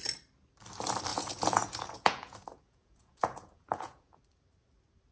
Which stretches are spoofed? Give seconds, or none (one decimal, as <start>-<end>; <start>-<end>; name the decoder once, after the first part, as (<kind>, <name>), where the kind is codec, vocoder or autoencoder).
1.1-4.2 (vocoder, Vocos)